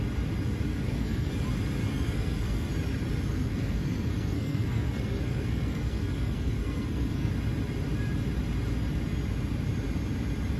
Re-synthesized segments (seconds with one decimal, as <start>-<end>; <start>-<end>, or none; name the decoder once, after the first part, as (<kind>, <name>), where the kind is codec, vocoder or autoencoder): 0.7-1.3 (codec, SNAC); 1.8-2.7; 3.3-7.3